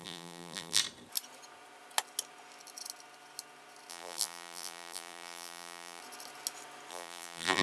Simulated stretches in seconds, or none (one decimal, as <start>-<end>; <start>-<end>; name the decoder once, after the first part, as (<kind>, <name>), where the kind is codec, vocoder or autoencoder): 0.0-0.8 (vocoder, BigVGAN v2); 3.9-6.0; 6.9-7.6

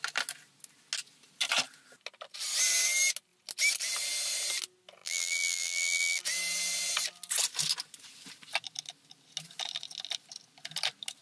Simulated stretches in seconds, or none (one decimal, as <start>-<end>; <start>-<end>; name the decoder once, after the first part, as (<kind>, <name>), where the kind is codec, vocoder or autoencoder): 5.0-6.2 (vocoder, BigVGAN v2)

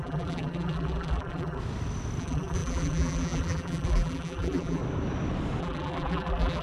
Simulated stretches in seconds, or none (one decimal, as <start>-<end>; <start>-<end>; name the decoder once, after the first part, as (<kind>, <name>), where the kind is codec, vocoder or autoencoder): 0.0-1.6 (vocoder, BigVGAN v2); 2.2-4.8; 5.6-6.6

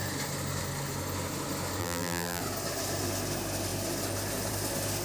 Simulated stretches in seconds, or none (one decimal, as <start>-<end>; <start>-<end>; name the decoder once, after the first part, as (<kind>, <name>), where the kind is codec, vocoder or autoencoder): 1.8-2.4 (vocoder, BigVGAN v2)

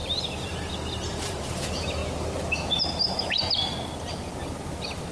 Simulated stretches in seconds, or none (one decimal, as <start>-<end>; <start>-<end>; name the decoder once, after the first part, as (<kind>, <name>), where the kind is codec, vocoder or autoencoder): 0.0-2.0 (vocoder, BigVGAN v2)

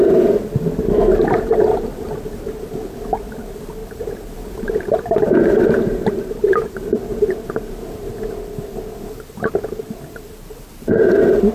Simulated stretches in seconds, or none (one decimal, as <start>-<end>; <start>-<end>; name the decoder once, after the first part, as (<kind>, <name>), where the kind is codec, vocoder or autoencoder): 3.8-8.8 (vocoder, BigVGAN v2)